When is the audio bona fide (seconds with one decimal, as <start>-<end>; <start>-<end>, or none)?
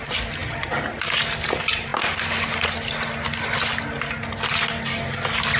0.0-5.6